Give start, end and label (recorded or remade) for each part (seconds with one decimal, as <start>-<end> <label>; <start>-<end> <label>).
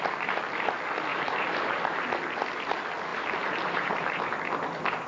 0.0-1.1 recorded; 1.1-2.1 remade; 2.1-3.1 recorded; 3.1-4.2 remade; 4.2-5.1 recorded